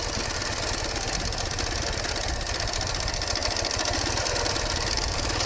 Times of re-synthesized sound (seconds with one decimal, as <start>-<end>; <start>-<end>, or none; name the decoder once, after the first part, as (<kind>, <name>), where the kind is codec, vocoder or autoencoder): none